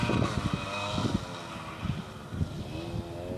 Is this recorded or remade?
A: recorded